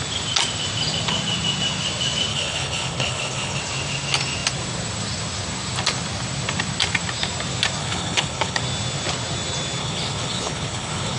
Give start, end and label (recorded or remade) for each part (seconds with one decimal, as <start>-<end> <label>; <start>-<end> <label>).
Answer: 0.0-2.3 recorded; 2.3-3.6 remade; 3.6-7.8 recorded; 7.8-8.6 remade; 8.6-9.8 recorded; 9.8-11.2 remade